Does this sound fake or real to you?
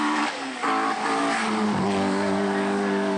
fake